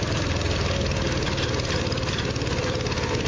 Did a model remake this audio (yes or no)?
yes